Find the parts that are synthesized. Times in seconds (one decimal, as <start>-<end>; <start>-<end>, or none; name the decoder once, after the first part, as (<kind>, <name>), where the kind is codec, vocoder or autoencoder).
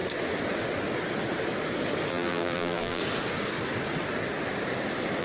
2.1-3.0 (vocoder, BigVGAN v2)